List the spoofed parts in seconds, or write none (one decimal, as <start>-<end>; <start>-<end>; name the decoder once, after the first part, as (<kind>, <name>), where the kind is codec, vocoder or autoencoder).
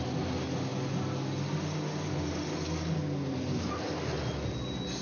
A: none